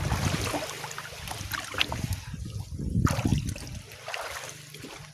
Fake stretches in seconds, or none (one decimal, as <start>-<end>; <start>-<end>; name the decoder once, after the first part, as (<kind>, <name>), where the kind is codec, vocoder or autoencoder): 3.3-5.1 (vocoder, BigVGAN v2)